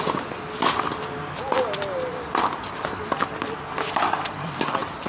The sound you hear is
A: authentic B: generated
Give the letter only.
A